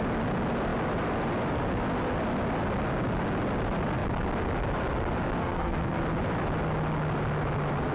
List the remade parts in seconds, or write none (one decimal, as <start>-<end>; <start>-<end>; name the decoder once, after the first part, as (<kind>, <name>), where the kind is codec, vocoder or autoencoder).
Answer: 5.4-6.0 (codec, SNAC)